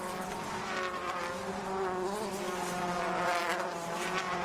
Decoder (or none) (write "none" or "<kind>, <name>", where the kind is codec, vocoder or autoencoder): none